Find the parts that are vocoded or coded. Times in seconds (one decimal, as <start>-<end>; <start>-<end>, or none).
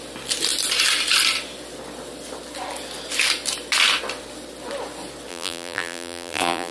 5.3-6.7